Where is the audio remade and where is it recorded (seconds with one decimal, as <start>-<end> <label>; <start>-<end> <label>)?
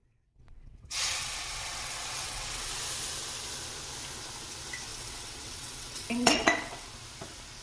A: 0.0-2.8 remade; 2.8-4.9 recorded; 4.9-6.9 remade; 6.9-7.6 recorded